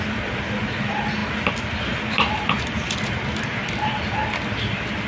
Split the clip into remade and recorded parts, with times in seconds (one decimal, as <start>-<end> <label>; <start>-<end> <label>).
0.0-5.1 recorded